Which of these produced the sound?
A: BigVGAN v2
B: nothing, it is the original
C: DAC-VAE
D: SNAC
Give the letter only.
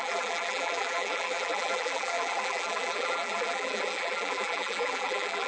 A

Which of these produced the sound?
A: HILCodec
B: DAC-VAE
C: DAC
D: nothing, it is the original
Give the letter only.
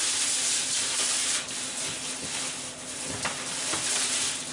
D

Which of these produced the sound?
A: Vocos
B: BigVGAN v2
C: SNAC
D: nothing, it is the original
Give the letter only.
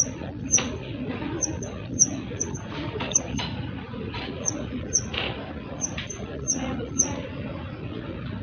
A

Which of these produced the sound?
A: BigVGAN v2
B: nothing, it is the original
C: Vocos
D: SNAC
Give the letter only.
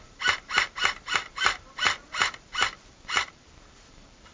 A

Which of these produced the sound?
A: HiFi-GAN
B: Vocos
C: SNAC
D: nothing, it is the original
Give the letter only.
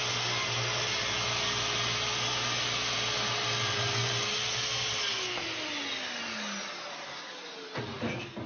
D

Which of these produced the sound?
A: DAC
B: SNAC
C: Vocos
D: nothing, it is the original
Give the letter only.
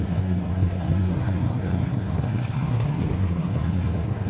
B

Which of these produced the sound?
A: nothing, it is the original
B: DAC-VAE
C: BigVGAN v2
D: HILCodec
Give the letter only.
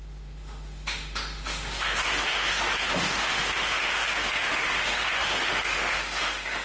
B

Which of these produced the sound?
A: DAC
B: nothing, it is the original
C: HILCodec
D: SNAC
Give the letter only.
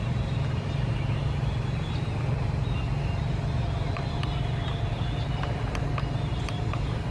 B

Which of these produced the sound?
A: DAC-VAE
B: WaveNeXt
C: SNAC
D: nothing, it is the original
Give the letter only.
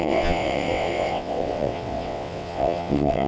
B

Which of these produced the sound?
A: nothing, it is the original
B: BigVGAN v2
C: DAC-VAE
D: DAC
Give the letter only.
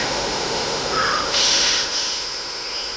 C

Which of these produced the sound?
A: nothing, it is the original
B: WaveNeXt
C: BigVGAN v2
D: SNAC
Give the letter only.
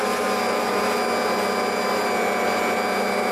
A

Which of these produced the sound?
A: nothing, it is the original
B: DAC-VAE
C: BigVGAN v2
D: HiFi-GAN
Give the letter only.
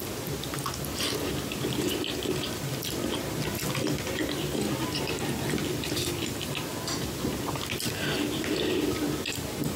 A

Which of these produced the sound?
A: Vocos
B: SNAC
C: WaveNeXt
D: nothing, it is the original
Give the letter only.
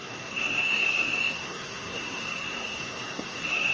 B